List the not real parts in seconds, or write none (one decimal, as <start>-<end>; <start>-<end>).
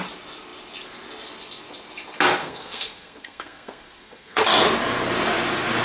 2.4-4.4